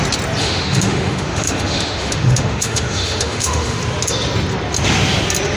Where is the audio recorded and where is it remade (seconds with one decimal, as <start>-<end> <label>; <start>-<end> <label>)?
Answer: 0.0-0.4 recorded; 0.4-3.8 remade; 3.8-5.6 recorded